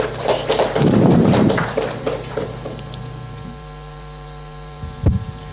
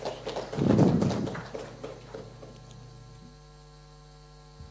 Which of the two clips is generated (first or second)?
first